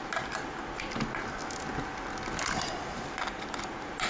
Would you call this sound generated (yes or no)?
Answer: no